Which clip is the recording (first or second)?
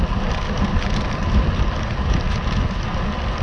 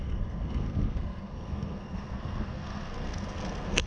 first